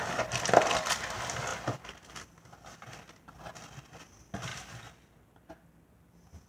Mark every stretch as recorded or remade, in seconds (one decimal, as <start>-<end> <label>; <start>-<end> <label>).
0.0-6.5 recorded